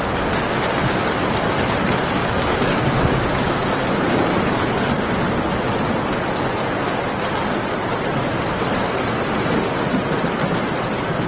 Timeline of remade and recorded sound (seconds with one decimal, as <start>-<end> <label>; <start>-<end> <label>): 0.0-2.2 recorded; 2.2-3.7 remade; 3.7-11.3 recorded